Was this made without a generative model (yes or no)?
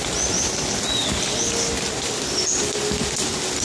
yes